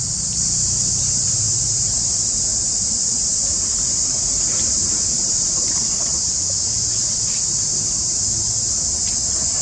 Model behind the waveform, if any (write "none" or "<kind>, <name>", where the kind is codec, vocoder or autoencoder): vocoder, BigVGAN v2